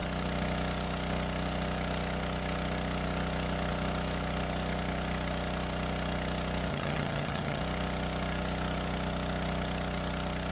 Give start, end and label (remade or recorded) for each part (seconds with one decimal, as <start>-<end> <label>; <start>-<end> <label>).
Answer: 0.0-6.7 recorded; 6.7-7.6 remade; 7.6-10.5 recorded